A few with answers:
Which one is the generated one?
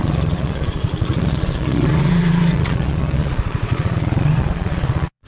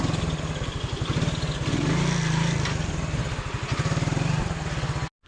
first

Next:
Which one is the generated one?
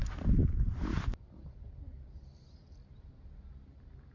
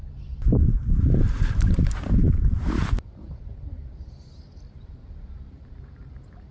second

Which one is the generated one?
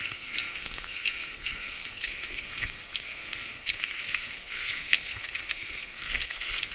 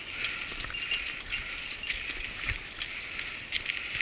first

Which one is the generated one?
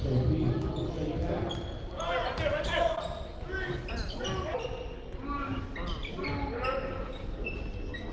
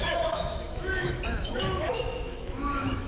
second